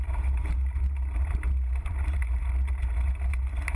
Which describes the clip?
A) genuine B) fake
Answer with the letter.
B